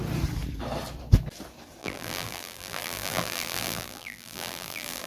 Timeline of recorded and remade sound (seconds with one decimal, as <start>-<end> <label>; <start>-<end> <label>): 0.0-1.8 recorded; 1.8-5.1 remade

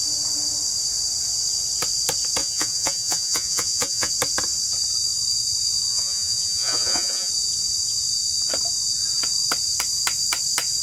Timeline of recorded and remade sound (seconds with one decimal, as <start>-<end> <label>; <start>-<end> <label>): 0.0-2.4 recorded; 2.4-4.1 remade; 4.1-5.9 recorded; 5.9-7.3 remade; 7.3-10.8 recorded